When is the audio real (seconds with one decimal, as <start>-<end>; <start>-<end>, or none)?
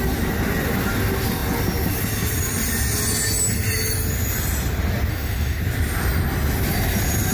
0.0-5.1; 5.6-7.3